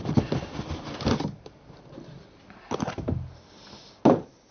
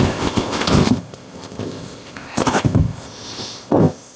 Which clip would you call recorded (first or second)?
first